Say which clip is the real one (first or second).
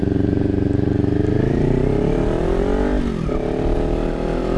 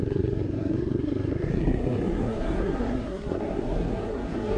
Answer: first